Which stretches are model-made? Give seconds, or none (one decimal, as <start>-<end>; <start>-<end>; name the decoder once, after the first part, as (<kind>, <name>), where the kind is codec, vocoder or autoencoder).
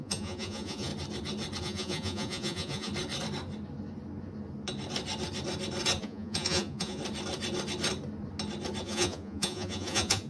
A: 0.0-0.9 (vocoder, Vocos); 1.6-2.9; 6.0-7.0; 8.8-10.3